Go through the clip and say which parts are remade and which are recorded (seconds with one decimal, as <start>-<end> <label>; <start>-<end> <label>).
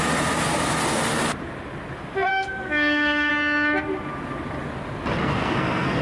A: 0.0-2.3 recorded; 2.3-3.3 remade; 3.3-5.2 recorded; 5.2-6.0 remade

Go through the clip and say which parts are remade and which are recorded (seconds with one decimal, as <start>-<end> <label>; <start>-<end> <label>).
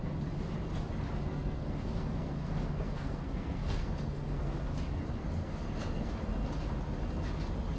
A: 0.0-1.3 recorded; 1.3-4.6 remade; 4.6-5.2 recorded; 5.2-6.1 remade; 6.1-7.8 recorded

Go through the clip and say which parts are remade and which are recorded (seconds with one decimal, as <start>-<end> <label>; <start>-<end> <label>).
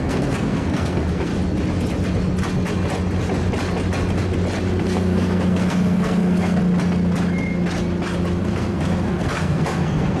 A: 0.0-1.3 remade; 1.3-4.8 recorded; 4.8-6.6 remade; 6.6-8.4 recorded; 8.4-10.2 remade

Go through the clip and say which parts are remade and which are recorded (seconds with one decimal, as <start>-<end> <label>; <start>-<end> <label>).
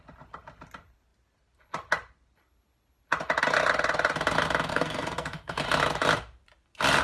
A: 0.0-4.7 recorded; 4.7-5.6 remade; 5.6-7.0 recorded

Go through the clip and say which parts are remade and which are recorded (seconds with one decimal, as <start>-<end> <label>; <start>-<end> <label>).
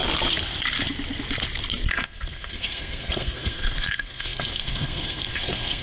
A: 0.0-1.9 recorded; 1.9-5.8 remade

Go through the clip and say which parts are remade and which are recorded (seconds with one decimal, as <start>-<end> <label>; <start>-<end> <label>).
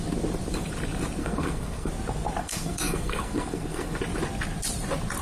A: 0.0-1.2 recorded; 1.2-1.9 remade; 1.9-2.4 recorded; 2.4-4.0 remade; 4.0-5.2 recorded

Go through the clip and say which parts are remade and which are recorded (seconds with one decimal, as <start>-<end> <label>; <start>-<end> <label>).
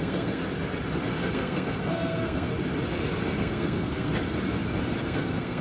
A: 0.0-0.4 remade; 0.4-1.0 recorded; 1.0-2.5 remade; 2.5-3.4 recorded; 3.4-4.1 remade; 4.1-5.0 recorded; 5.0-5.6 remade